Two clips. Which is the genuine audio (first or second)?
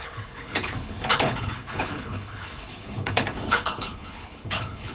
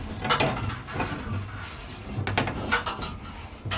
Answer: second